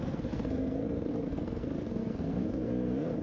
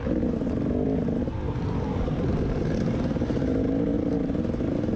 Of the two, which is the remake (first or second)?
first